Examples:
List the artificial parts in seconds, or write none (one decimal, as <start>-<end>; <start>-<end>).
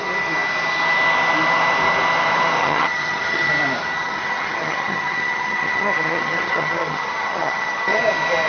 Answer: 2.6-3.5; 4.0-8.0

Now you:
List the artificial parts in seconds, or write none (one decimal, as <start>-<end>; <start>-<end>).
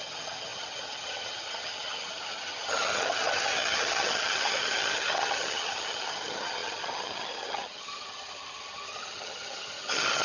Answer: 0.0-10.2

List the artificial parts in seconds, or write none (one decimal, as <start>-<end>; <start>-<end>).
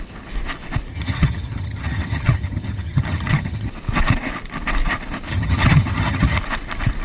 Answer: 0.9-3.7; 5.3-6.4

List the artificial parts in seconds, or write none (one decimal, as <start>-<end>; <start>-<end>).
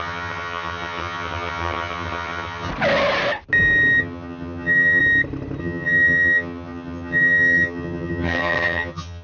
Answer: 0.0-2.7; 4.0-5.0; 5.6-9.2